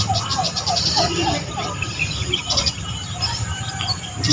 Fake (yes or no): no